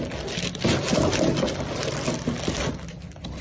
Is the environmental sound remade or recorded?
recorded